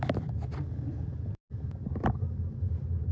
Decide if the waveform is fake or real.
real